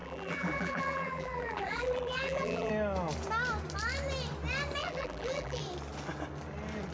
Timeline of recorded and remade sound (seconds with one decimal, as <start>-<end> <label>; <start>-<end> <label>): 0.0-2.7 remade; 2.7-4.8 recorded; 4.8-5.6 remade; 5.6-6.9 recorded